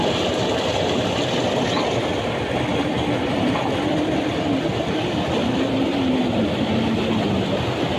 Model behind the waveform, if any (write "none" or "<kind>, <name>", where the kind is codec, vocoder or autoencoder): none